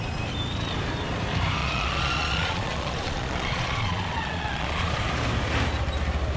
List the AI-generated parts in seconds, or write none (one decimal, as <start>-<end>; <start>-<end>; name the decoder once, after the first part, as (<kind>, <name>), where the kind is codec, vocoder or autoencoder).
1.6-4.9 (vocoder, Vocos)